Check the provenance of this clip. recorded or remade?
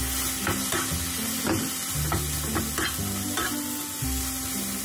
recorded